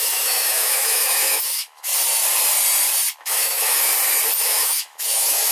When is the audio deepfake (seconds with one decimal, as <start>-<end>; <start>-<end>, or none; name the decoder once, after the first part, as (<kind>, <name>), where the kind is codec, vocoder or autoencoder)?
0.0-1.9 (autoencoder, DAC-VAE); 3.2-3.9; 4.4-5.5